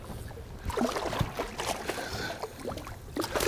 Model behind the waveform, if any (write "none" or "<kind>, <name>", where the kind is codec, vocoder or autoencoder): none